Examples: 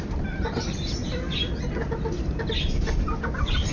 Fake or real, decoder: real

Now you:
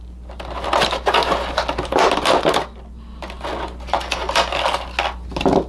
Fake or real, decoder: real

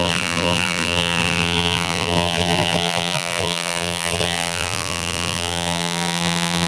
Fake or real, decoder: fake, vocoder, BigVGAN v2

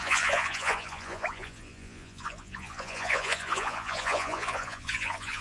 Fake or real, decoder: fake, vocoder, Vocos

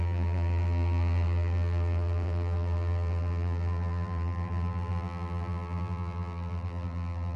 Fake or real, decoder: fake, vocoder, BigVGAN v2